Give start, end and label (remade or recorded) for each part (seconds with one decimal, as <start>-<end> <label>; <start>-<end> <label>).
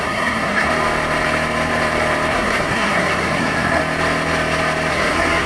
0.0-0.7 remade; 0.7-2.3 recorded; 2.3-3.8 remade; 3.8-4.9 recorded; 4.9-5.5 remade